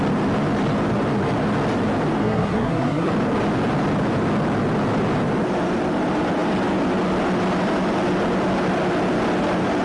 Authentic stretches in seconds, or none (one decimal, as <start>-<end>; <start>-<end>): 0.0-2.2; 3.1-9.8

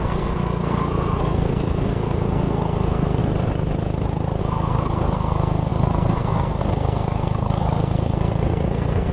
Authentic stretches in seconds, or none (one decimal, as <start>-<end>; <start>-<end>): 3.2-4.4

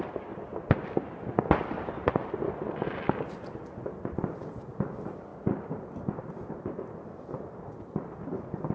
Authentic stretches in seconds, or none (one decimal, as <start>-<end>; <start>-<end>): 0.0-8.7

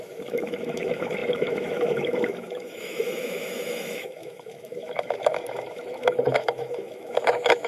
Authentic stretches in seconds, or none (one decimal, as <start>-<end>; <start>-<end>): none

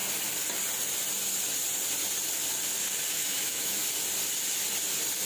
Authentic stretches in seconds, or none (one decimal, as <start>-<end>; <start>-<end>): 0.0-3.1; 3.8-5.2

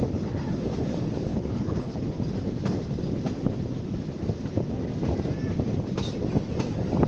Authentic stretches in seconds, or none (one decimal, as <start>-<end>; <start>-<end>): 0.0-1.3; 2.1-7.1

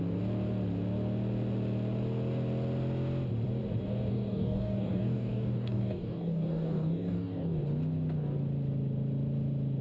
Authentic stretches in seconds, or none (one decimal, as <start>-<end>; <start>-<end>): 0.0-4.1; 7.6-9.8

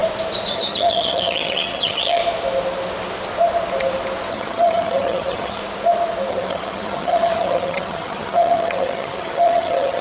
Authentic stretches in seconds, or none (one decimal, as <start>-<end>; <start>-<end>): 0.0-0.5; 2.2-4.3; 5.6-6.3